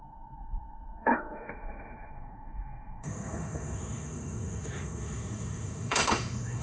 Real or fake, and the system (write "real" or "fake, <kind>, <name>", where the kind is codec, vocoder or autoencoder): fake, autoencoder, DAC-VAE